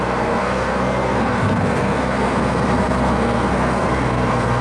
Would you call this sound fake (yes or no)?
yes